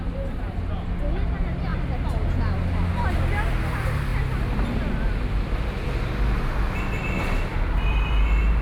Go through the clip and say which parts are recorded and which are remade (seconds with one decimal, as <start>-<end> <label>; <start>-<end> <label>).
0.0-8.6 recorded